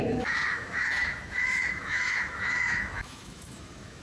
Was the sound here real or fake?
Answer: fake